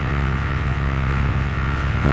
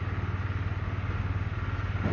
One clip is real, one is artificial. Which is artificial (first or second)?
first